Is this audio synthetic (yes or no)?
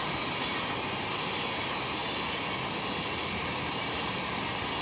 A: no